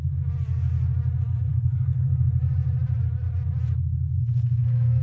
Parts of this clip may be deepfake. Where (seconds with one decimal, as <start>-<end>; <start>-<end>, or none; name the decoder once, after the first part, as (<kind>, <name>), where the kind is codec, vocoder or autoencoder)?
1.5-2.0 (codec, SNAC); 4.2-5.0